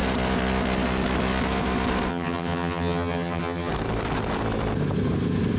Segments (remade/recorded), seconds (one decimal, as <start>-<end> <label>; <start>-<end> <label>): 0.0-2.1 recorded; 2.1-3.7 remade; 3.7-5.6 recorded